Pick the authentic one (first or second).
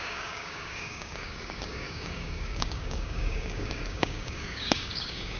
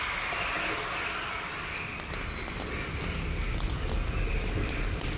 second